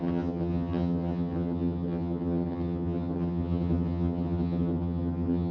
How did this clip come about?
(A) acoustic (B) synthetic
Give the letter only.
B